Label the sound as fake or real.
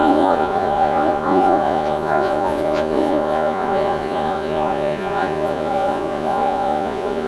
fake